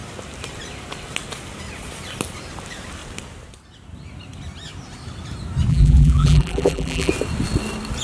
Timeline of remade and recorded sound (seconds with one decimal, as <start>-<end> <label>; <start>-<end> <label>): 0.0-5.7 recorded; 5.7-7.1 remade; 7.1-8.0 recorded